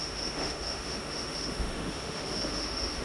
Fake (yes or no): yes